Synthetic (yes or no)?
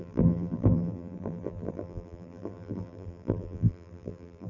yes